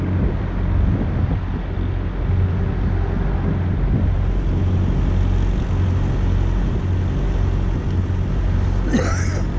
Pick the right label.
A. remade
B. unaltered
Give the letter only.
B